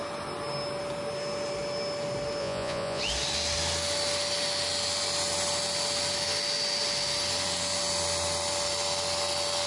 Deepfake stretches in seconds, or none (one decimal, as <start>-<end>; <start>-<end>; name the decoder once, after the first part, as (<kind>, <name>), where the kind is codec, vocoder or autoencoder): 2.4-3.0 (vocoder, Vocos)